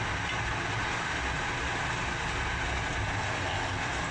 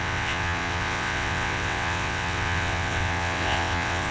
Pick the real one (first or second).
first